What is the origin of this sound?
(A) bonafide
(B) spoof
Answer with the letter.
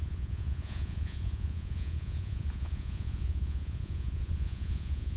B